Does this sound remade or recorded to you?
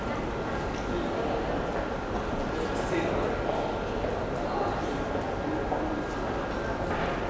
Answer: recorded